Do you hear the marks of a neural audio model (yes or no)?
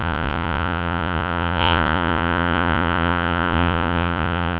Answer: yes